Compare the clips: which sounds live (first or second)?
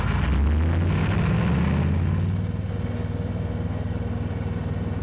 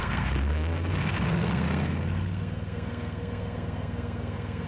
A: first